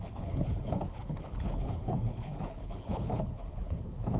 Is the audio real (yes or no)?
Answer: no